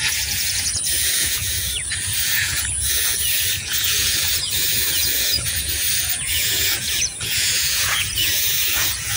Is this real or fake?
fake